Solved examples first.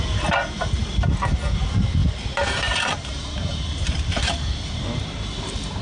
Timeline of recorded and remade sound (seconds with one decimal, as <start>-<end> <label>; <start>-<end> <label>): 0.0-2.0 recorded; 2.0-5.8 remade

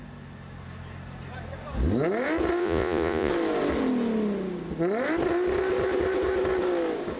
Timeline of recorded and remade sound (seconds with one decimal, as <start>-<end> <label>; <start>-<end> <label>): 0.0-2.6 recorded; 2.6-3.3 remade; 3.3-7.2 recorded

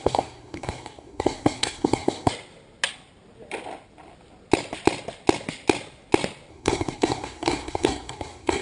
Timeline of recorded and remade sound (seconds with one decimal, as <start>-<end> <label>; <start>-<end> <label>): 0.0-2.3 remade; 2.3-6.5 recorded; 6.5-8.6 remade

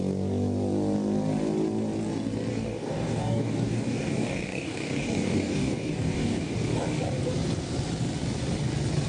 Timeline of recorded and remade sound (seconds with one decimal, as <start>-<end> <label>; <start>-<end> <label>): 0.0-2.5 recorded; 2.5-6.5 remade; 6.5-9.1 recorded

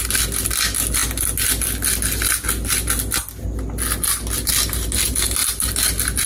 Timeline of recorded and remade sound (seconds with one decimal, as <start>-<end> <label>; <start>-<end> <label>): 0.0-6.3 recorded